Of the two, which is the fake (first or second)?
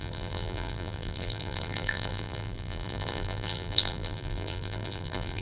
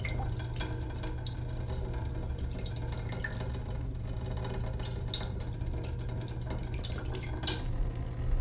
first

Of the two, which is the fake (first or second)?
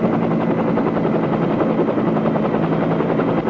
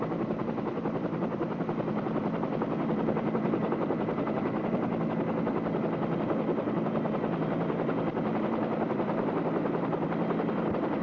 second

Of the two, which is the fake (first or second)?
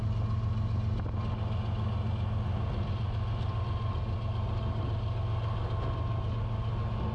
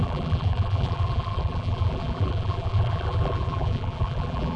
second